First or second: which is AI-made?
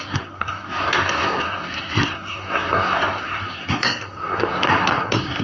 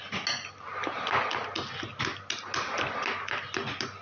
first